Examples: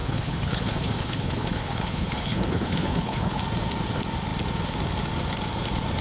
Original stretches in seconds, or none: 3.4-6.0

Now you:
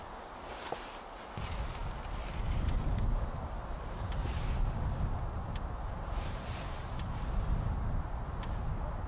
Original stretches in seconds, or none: 0.0-9.1

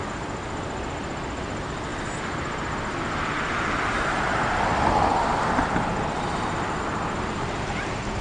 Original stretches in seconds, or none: 0.0-8.2

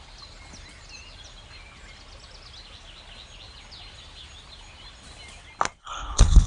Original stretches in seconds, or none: 0.0-5.8